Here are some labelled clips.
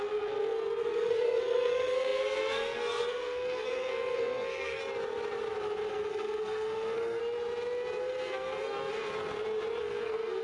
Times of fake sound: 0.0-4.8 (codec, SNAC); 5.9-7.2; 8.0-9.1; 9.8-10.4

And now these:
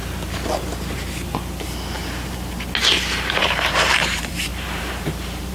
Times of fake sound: 3.3-5.5 (vocoder, BigVGAN v2)